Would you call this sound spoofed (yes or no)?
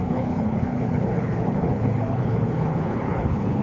yes